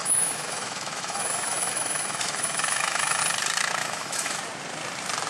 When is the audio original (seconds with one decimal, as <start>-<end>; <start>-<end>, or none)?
3.2-3.8; 4.4-5.3